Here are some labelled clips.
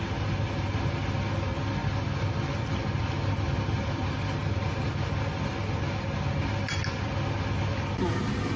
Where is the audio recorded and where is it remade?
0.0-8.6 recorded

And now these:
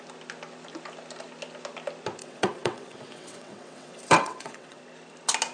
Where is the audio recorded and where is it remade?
0.0-2.2 recorded; 2.2-4.8 remade; 4.8-5.5 recorded

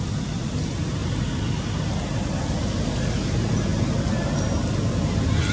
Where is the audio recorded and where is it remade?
0.0-5.5 recorded

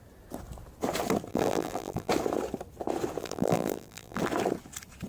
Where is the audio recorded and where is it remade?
0.0-1.3 recorded; 1.3-2.1 remade; 2.1-3.2 recorded; 3.2-4.2 remade; 4.2-5.1 recorded